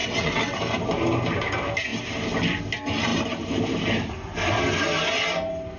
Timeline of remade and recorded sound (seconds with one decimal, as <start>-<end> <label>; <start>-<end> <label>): 0.0-0.6 remade; 0.6-5.8 recorded